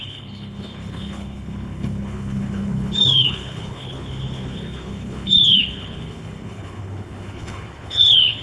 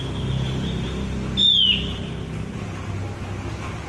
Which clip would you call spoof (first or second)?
first